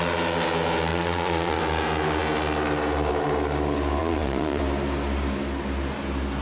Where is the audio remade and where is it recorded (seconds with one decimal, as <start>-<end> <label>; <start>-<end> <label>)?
0.0-0.9 recorded; 0.9-1.6 remade; 1.6-4.0 recorded; 4.0-4.6 remade; 4.6-6.4 recorded